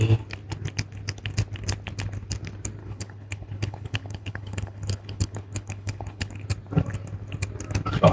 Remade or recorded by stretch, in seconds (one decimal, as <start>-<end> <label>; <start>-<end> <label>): 0.0-2.8 recorded; 2.8-6.3 remade; 6.3-8.1 recorded